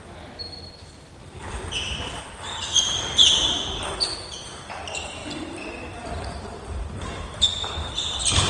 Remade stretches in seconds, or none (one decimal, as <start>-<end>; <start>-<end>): 0.0-8.5

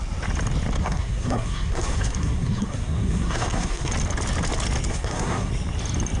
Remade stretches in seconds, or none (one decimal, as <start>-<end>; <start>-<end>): 0.8-3.9; 4.9-5.5

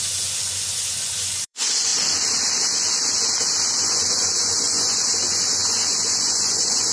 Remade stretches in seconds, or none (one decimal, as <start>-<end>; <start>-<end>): 0.0-1.9; 3.8-6.9

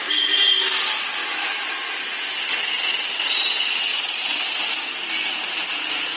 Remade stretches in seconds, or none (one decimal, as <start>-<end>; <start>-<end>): 1.2-2.0

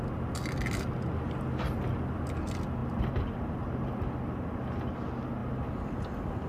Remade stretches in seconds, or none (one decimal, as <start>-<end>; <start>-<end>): 5.4-6.5